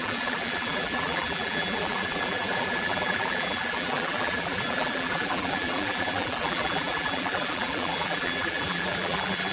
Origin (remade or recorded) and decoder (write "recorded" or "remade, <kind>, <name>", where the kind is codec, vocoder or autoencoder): remade, vocoder, BigVGAN v2